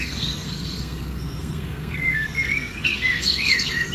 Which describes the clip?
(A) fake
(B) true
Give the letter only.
A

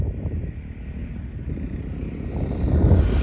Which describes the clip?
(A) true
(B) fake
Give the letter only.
A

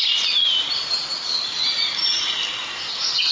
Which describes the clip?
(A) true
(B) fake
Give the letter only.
A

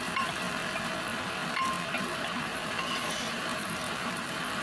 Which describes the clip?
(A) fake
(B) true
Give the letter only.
A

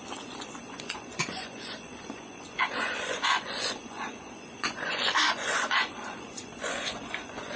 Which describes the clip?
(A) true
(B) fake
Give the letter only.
B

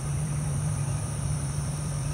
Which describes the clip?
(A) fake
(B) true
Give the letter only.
A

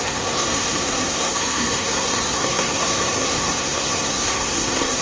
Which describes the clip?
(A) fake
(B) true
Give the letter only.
A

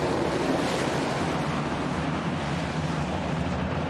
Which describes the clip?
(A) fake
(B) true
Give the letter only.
A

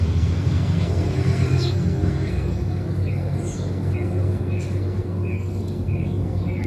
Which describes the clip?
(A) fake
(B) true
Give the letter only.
A